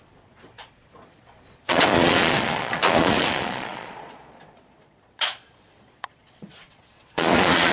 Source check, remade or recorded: remade